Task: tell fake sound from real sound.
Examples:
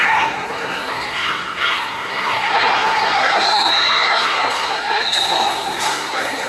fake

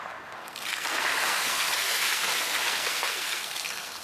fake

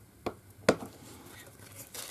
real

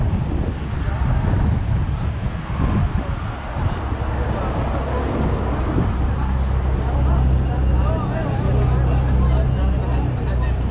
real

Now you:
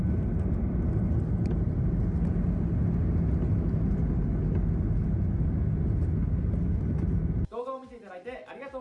real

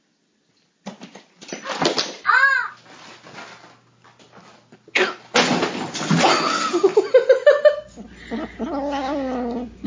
real